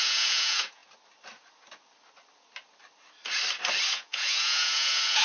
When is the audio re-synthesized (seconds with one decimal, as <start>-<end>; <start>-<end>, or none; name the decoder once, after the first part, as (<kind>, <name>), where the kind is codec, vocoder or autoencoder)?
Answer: 0.0-0.8 (vocoder, Vocos); 3.9-5.2

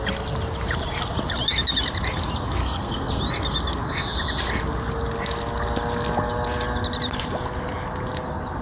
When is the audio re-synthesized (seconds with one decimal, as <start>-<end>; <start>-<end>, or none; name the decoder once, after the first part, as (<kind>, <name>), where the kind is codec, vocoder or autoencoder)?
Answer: 2.6-3.2 (codec, SNAC)

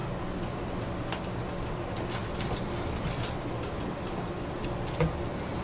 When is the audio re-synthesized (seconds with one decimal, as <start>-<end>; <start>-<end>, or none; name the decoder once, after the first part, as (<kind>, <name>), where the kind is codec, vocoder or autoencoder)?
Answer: none

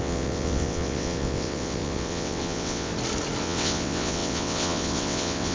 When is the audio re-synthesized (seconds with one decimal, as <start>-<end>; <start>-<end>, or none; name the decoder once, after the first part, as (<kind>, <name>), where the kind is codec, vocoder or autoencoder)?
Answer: 0.0-2.9 (vocoder, WaveNeXt); 3.4-5.5

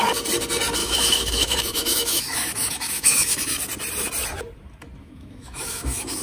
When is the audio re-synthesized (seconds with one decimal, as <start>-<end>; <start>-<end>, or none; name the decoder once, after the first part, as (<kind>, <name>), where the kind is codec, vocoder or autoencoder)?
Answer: 0.8-3.6 (autoencoder, DAC-VAE); 5.0-6.2

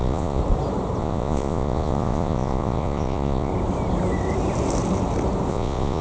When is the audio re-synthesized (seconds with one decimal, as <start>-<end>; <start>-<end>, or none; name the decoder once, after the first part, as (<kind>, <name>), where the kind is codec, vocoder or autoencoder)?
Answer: 0.0-0.4 (vocoder, Vocos); 1.0-3.5; 5.5-6.0